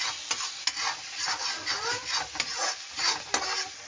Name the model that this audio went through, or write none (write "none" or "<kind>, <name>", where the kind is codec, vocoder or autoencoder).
none